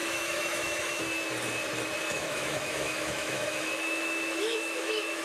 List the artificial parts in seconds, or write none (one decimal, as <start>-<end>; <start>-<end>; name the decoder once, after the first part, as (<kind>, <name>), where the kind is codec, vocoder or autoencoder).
0.0-1.0 (autoencoder, DAC-VAE); 2.1-5.2